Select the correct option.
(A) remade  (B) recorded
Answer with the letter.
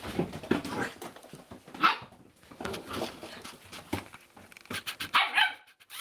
A